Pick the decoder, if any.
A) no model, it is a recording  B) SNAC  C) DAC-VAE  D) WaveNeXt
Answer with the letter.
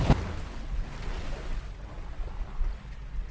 A